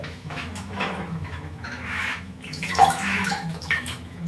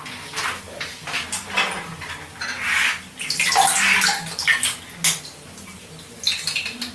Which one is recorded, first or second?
second